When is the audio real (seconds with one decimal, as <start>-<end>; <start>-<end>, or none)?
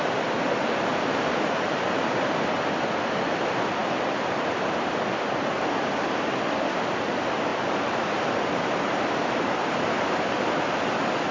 0.0-0.9; 2.5-7.5; 10.6-11.3